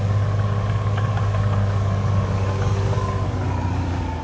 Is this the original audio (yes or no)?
no